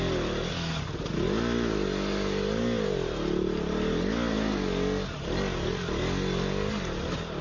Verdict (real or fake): real